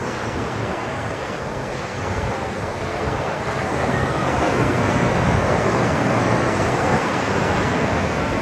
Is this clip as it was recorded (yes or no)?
no